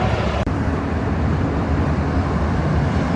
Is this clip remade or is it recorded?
remade